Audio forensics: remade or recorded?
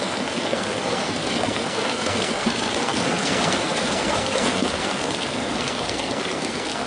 remade